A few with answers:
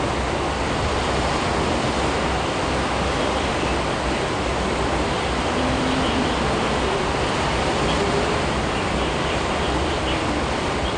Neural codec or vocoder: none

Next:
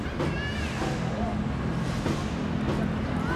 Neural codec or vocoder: none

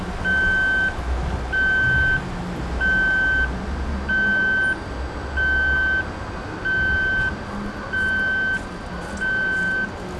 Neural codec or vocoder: none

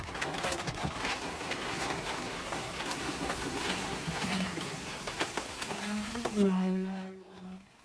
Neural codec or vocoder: codec, SNAC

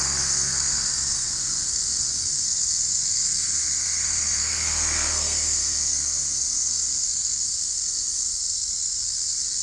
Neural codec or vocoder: codec, SNAC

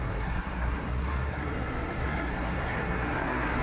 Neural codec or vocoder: codec, SNAC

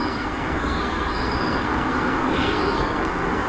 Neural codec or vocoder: codec, SNAC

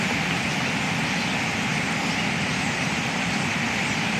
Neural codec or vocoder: none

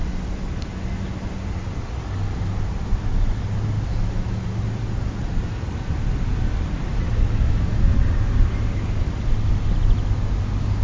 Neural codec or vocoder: none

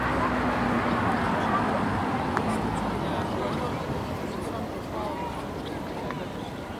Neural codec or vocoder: none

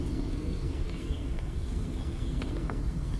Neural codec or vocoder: codec, SNAC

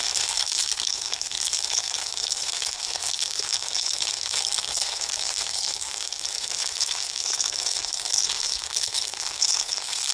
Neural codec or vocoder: codec, SNAC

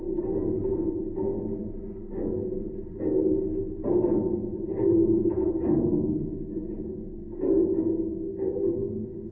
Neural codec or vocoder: none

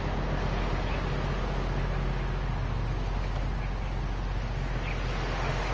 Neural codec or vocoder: none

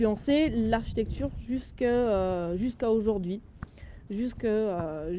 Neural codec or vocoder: none